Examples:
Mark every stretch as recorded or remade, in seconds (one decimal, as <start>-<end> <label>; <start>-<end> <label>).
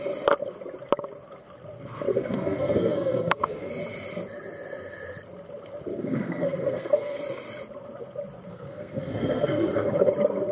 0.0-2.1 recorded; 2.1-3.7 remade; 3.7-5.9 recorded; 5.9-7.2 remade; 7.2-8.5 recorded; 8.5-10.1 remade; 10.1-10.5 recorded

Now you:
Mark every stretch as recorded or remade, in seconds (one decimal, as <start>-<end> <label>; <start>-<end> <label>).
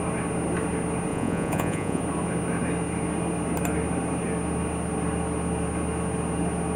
0.0-1.1 recorded; 1.1-2.0 remade; 2.0-6.8 recorded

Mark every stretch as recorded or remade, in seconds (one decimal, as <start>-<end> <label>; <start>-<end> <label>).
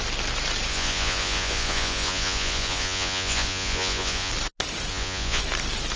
0.0-0.7 recorded; 0.7-4.3 remade; 4.3-4.9 recorded; 4.9-5.4 remade; 5.4-6.0 recorded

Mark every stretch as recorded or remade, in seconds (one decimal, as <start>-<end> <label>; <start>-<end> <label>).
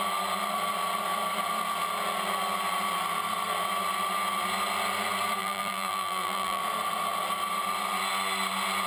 0.0-5.4 recorded; 5.4-6.6 remade; 6.6-8.9 recorded